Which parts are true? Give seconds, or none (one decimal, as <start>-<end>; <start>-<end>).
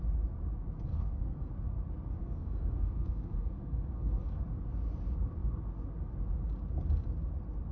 0.0-0.9; 1.5-2.2; 4.4-7.7